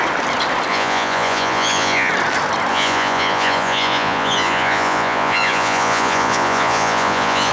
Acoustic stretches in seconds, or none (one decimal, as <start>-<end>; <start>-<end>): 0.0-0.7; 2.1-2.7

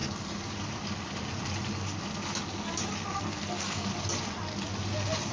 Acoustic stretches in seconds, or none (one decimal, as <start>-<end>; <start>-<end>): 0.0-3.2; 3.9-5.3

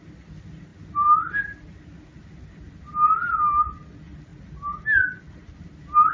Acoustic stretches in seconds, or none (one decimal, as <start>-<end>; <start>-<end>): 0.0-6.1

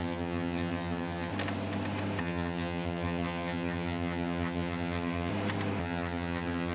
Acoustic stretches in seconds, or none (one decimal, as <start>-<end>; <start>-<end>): 1.3-2.2; 5.3-5.8

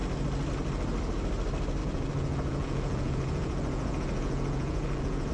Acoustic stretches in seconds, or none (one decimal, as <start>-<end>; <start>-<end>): 0.0-1.8

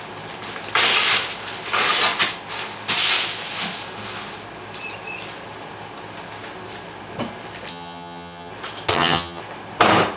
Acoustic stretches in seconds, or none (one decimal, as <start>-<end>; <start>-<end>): 0.0-7.7; 8.5-8.9; 9.4-10.2

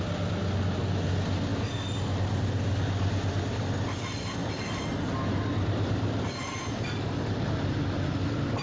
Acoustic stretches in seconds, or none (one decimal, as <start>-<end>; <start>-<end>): 0.0-8.6

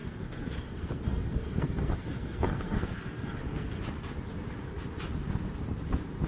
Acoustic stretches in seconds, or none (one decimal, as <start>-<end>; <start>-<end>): 3.8-6.3